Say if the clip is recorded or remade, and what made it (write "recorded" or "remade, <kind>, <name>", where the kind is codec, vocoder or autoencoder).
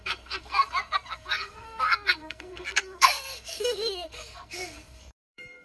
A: remade, codec, SNAC